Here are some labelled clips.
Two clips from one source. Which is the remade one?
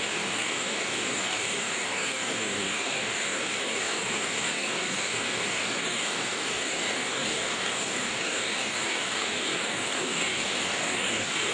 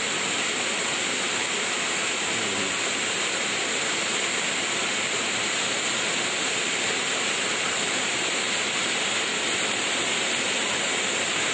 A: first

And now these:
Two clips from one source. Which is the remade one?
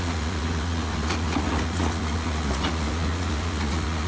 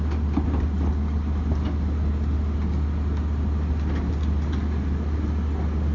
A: first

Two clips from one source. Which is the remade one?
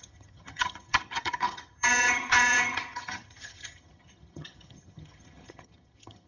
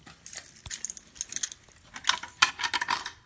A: first